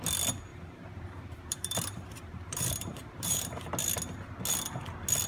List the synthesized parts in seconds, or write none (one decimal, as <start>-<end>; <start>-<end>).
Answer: 0.5-3.7